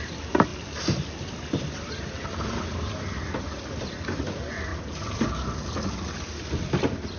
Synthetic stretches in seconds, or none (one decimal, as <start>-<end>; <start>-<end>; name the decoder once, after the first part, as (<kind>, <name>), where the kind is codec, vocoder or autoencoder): none